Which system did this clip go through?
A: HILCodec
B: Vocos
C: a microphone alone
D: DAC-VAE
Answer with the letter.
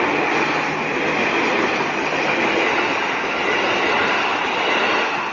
C